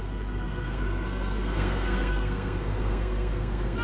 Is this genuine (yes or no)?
no